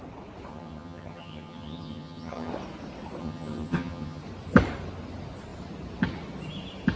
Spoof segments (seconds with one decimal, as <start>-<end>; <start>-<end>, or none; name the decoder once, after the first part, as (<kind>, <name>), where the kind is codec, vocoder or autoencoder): 0.5-2.5 (vocoder, HiFi-GAN); 3.2-4.2